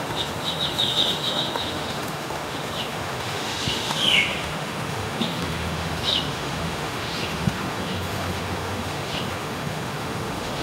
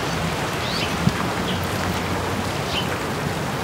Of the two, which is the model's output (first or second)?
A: first